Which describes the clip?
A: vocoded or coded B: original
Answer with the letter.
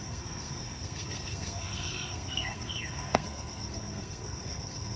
A